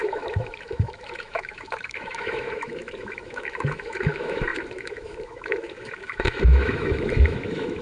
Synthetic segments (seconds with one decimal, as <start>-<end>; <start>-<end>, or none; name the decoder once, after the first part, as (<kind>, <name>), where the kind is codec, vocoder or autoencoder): 0.0-7.8 (autoencoder, DAC-VAE)